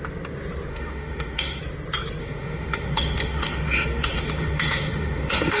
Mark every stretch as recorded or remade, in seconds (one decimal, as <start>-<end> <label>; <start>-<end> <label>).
0.0-0.7 recorded; 0.7-1.6 remade; 1.6-2.2 recorded; 2.2-5.6 remade

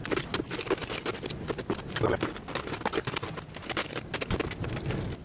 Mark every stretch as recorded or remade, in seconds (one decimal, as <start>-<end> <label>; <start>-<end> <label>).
0.0-5.2 recorded

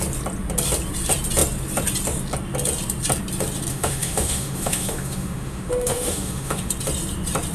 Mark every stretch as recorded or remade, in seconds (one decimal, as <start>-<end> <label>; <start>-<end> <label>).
0.0-3.7 recorded; 3.7-6.7 remade; 6.7-7.5 recorded

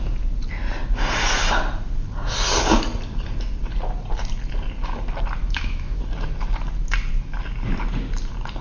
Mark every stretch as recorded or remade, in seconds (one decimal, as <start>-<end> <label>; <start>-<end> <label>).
0.0-5.4 recorded; 5.4-6.0 remade; 6.0-8.6 recorded